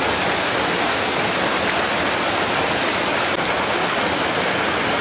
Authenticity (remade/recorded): recorded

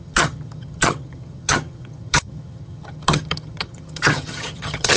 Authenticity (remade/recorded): remade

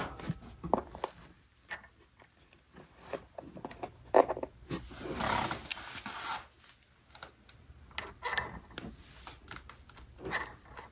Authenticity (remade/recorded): recorded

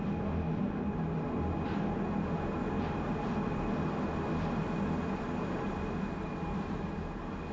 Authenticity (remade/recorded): recorded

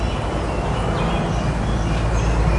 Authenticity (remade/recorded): recorded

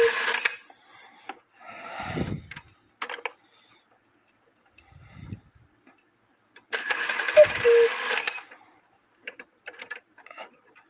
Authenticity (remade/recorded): recorded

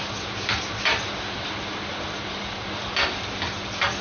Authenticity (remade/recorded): recorded